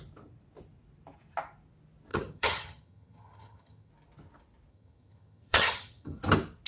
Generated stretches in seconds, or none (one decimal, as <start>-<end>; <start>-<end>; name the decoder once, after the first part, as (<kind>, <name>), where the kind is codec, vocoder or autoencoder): 2.1-3.9 (vocoder, HiFi-GAN); 4.7-6.2